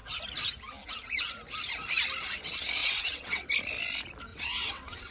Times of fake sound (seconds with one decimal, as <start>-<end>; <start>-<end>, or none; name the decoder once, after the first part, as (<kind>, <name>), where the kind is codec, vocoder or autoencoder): 2.8-3.5 (vocoder, WaveNeXt); 4.3-5.1